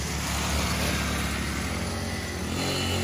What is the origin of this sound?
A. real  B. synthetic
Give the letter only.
A